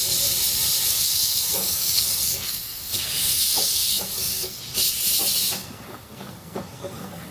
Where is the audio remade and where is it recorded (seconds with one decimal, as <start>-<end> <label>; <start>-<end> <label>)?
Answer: 0.0-0.9 recorded; 0.9-4.6 remade; 4.6-5.6 recorded; 5.6-7.3 remade